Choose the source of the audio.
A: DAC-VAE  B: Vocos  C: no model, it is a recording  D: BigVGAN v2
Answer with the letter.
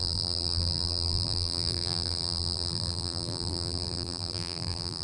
D